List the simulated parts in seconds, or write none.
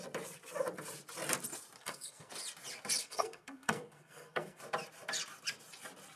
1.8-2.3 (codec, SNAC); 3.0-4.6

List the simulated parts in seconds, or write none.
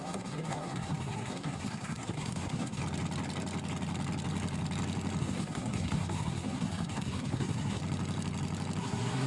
0.0-2.8 (codec, SNAC); 5.2-7.8; 8.8-9.3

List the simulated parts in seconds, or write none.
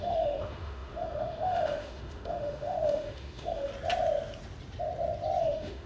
0.0-3.7 (autoencoder, DAC-VAE); 5.4-5.9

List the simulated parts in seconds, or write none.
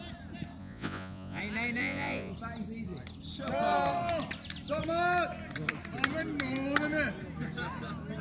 0.6-1.4 (vocoder, Vocos); 1.8-2.3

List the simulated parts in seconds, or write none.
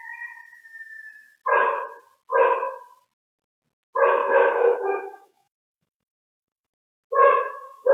4.2-6.7 (autoencoder, DAC-VAE); 7.2-7.9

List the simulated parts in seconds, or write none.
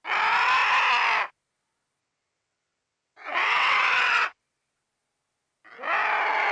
2.0-4.4 (vocoder, WaveNeXt)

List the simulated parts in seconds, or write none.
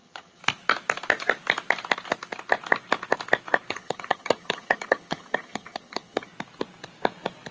0.0-0.4 (vocoder, HiFi-GAN); 3.7-6.3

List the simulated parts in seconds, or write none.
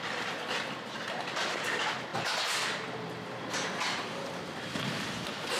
none